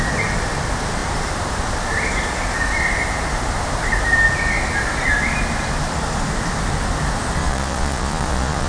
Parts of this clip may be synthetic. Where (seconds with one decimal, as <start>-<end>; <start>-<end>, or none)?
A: 7.4-8.7

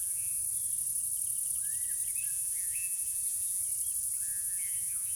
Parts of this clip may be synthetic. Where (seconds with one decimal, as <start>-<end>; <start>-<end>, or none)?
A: 0.0-0.4; 2.3-3.6; 4.2-5.2

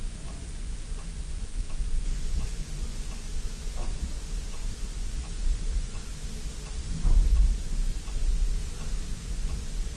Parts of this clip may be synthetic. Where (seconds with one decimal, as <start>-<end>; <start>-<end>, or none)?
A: 0.0-6.1; 7.1-8.6; 9.1-10.0

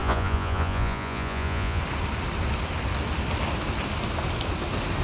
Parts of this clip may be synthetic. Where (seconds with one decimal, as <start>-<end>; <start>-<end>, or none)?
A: 0.0-1.8